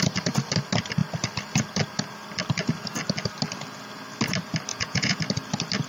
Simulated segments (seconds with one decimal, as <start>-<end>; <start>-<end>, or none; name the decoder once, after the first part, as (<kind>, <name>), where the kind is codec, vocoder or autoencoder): 4.7-5.2 (vocoder, Vocos)